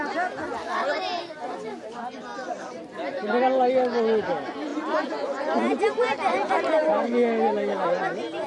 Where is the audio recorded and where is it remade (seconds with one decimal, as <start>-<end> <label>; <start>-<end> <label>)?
0.0-8.5 recorded